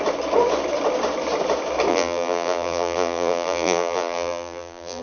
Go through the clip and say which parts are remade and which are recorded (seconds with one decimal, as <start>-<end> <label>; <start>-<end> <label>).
0.0-1.9 recorded; 1.9-5.0 remade